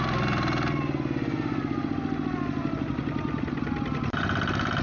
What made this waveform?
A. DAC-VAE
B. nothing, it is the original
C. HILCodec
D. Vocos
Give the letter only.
B